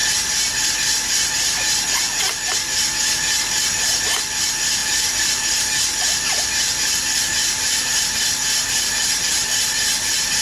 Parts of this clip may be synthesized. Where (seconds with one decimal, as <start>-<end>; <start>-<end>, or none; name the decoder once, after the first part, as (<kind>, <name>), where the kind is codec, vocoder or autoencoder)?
4.8-10.4 (vocoder, BigVGAN v2)